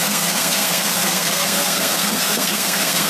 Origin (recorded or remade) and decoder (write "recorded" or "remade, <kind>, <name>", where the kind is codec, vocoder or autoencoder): remade, codec, SNAC